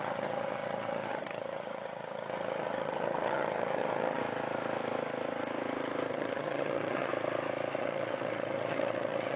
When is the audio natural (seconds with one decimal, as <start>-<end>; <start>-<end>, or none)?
4.2-6.1; 7.1-7.8